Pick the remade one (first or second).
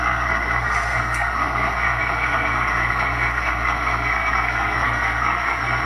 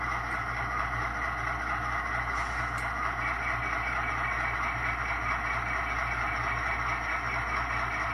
first